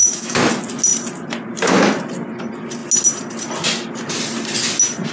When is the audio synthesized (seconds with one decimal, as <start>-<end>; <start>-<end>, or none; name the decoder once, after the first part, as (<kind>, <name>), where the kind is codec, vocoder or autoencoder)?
0.0-0.5 (autoencoder, DAC-VAE)

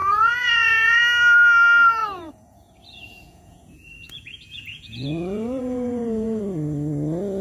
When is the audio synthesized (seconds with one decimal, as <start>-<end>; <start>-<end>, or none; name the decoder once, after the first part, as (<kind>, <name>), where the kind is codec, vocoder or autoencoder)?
0.0-1.0 (vocoder, Vocos); 2.0-6.4

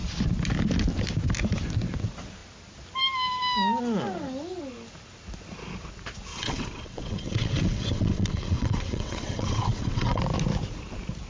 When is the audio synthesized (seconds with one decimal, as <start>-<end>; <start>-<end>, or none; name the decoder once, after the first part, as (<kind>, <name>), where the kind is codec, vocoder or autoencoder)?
6.3-10.2 (vocoder, WaveNeXt)

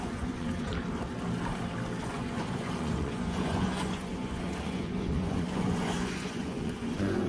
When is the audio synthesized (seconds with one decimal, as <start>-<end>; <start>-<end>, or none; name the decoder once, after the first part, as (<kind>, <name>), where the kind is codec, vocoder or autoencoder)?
0.0-0.7 (vocoder, Vocos); 2.0-7.3

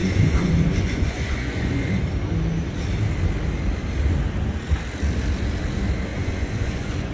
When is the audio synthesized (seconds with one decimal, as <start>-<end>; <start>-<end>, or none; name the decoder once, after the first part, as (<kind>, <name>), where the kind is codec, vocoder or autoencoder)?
0.0-2.0 (vocoder, Vocos); 6.1-7.1

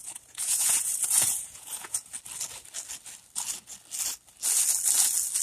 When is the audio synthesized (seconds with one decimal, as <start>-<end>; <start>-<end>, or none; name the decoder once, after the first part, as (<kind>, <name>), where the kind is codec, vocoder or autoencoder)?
0.0-2.1 (vocoder, Vocos)

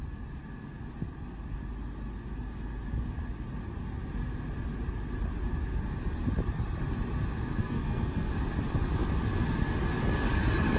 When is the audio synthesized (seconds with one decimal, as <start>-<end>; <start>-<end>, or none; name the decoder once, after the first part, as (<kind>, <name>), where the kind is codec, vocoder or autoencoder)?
7.6-8.3 (codec, SNAC)